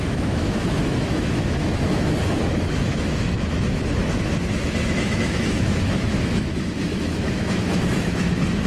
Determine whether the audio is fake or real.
fake